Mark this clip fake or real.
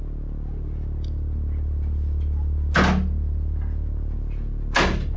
real